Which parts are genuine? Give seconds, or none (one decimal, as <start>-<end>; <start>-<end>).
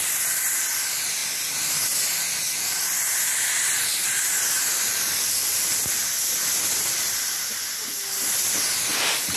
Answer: 0.0-9.4